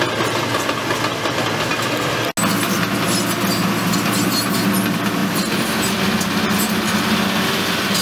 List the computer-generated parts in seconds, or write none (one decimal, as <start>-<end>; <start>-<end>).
none